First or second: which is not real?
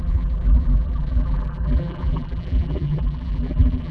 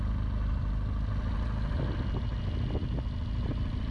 first